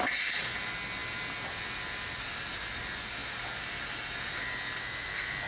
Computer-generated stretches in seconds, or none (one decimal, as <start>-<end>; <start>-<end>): none